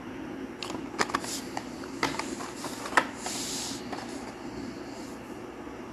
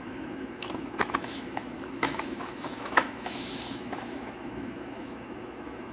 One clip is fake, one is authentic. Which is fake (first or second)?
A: second